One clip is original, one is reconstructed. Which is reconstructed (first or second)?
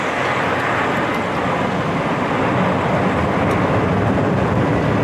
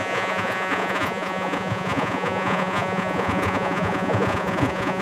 second